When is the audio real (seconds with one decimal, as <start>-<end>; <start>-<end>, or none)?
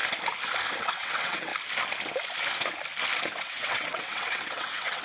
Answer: 0.0-0.8; 1.5-3.4